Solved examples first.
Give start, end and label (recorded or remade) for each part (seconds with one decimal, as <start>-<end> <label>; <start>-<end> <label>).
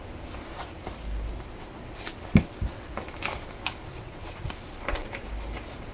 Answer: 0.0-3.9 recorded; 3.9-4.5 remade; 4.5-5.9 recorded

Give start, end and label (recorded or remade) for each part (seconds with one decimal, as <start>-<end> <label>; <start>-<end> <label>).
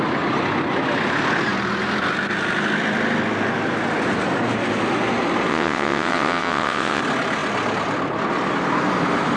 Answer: 0.0-5.5 recorded; 5.5-7.0 remade; 7.0-9.4 recorded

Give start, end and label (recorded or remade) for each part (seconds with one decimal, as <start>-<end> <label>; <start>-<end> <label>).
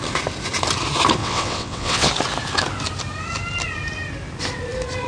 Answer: 0.0-1.2 recorded; 1.2-2.1 remade; 2.1-5.1 recorded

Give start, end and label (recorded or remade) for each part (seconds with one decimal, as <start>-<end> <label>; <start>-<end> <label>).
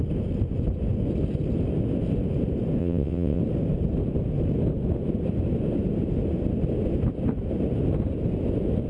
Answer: 0.0-2.8 recorded; 2.8-3.4 remade; 3.4-8.9 recorded